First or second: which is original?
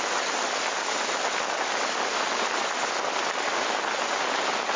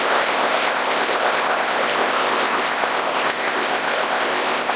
first